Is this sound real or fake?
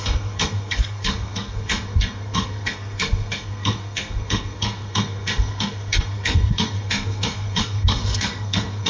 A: fake